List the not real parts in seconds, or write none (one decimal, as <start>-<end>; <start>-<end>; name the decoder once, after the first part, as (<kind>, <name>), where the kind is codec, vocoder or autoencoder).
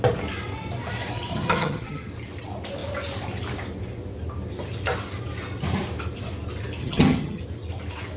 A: 1.3-2.1 (vocoder, HiFi-GAN); 6.8-7.4